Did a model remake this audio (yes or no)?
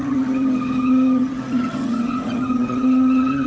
yes